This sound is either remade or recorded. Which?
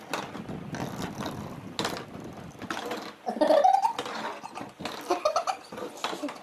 recorded